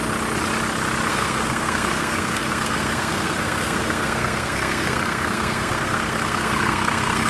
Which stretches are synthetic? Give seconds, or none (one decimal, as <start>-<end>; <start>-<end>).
1.1-7.3